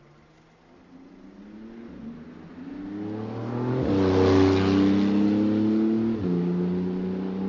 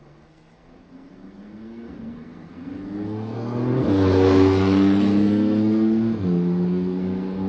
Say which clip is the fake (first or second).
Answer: second